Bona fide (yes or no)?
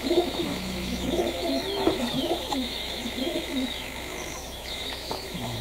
no